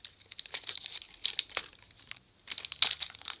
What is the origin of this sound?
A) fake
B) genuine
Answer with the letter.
B